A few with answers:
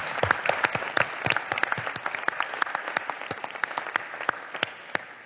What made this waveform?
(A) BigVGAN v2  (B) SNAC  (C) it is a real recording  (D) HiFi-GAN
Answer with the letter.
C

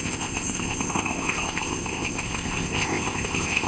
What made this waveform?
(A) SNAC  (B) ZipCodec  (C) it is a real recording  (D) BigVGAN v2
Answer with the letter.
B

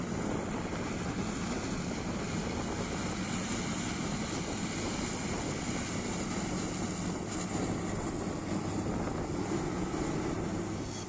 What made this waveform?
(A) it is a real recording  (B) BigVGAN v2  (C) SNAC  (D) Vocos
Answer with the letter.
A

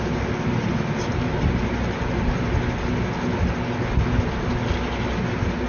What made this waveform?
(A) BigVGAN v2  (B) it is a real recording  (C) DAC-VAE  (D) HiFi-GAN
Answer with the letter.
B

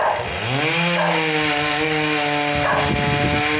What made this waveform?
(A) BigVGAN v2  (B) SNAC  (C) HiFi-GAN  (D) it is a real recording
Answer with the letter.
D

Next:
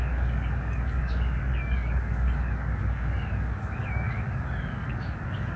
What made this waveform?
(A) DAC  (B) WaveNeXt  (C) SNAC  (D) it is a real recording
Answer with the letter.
A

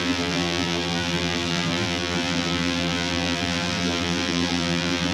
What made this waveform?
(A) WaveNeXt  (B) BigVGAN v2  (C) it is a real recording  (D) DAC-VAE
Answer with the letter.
B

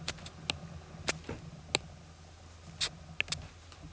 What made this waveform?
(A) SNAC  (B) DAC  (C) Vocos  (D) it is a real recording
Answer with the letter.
D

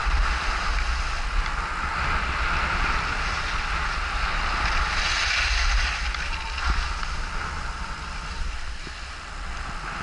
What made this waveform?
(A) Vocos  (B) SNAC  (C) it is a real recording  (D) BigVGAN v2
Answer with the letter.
C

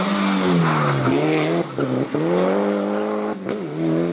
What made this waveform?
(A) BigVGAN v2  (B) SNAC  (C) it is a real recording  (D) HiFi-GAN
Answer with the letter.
C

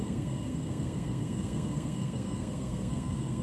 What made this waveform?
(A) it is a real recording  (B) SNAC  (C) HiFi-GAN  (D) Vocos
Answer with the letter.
B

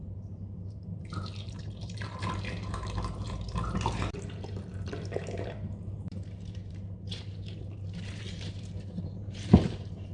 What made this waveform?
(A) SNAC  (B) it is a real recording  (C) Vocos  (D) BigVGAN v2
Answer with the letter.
D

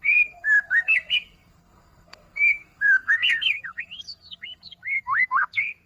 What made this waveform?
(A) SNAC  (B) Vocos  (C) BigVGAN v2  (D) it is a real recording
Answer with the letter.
A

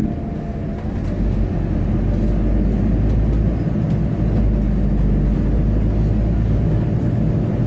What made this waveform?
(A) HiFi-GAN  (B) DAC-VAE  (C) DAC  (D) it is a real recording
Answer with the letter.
D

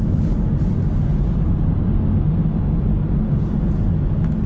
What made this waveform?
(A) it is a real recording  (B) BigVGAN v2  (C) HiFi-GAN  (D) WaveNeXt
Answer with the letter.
A